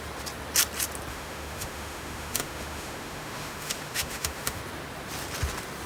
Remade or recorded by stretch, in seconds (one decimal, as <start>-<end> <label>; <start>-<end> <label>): 0.0-1.1 recorded; 1.1-4.6 remade; 4.6-5.9 recorded